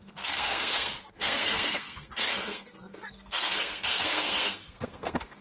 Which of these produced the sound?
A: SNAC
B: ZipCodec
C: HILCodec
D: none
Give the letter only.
A